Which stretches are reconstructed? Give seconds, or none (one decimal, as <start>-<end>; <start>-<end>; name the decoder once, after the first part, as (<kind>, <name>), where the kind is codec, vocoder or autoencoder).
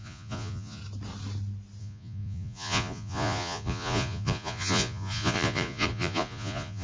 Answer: 0.0-0.8 (vocoder, Vocos); 1.8-6.8